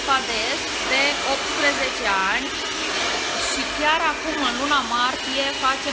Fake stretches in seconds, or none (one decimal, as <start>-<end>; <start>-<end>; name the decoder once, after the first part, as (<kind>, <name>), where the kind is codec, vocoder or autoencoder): none